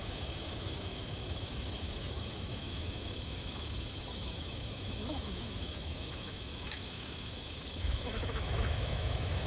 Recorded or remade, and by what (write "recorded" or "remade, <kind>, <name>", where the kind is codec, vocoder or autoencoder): remade, autoencoder, DAC-VAE